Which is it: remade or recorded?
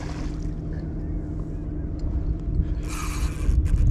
recorded